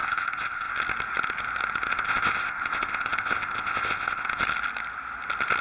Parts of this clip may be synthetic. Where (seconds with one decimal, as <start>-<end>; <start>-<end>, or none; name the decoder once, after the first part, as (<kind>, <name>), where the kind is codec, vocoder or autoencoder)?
0.0-0.7 (codec, ZipCodec); 1.9-4.4